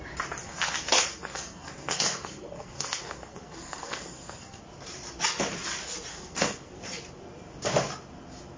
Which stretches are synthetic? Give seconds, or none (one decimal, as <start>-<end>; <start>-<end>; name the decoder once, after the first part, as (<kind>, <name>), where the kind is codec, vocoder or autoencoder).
0.4-4.6 (codec, SNAC); 6.1-6.8